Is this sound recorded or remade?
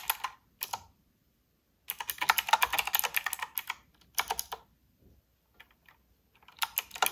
recorded